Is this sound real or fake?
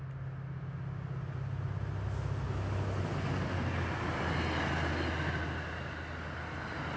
real